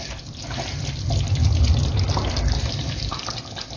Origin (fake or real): fake